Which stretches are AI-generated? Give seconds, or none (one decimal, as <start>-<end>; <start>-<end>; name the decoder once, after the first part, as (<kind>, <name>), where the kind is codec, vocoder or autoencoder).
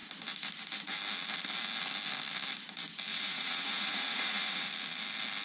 3.1-4.7 (vocoder, Vocos)